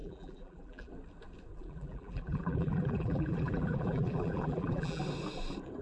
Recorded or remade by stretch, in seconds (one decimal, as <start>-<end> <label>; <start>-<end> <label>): 0.0-0.9 remade; 0.9-1.5 recorded; 1.5-5.0 remade; 5.0-5.8 recorded

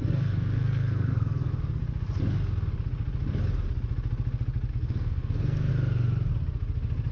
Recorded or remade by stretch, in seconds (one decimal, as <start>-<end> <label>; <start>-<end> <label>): 0.0-1.5 remade; 1.5-4.7 recorded; 4.7-5.7 remade; 5.7-7.1 recorded

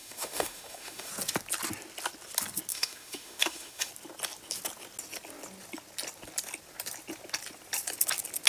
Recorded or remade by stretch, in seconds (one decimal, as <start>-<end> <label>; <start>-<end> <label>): 0.0-1.1 remade; 1.1-2.7 recorded; 2.7-3.9 remade; 3.9-8.5 recorded

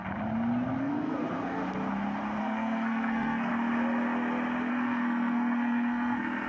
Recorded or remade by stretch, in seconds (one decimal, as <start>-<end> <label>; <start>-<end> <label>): 0.0-0.8 recorded; 0.8-1.6 remade; 1.6-2.4 recorded; 2.4-3.5 remade; 3.5-4.7 recorded; 4.7-6.5 remade

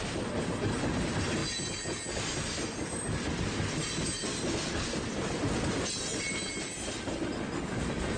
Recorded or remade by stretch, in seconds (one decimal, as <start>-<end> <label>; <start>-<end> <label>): 0.0-8.2 recorded

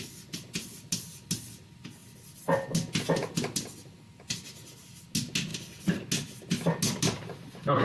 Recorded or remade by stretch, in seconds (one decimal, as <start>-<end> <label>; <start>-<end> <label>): 0.0-7.8 recorded

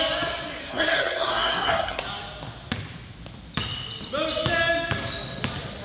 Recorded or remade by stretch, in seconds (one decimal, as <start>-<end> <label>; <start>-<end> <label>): 0.0-0.6 recorded; 0.6-2.0 remade; 2.0-5.8 recorded